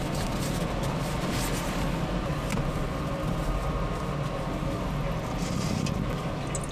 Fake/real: real